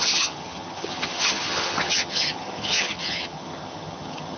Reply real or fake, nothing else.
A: fake